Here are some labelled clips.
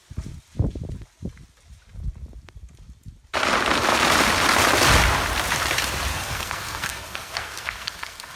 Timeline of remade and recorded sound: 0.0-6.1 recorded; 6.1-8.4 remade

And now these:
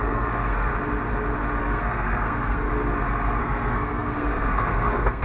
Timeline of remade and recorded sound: 0.0-0.7 remade; 0.7-1.6 recorded; 1.6-2.7 remade; 2.7-3.4 recorded; 3.4-5.2 remade

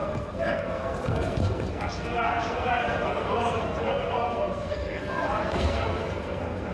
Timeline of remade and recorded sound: 0.0-6.7 remade

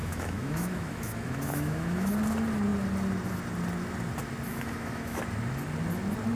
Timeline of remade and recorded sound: 0.0-2.1 remade; 2.1-4.5 recorded; 4.5-5.2 remade; 5.2-6.4 recorded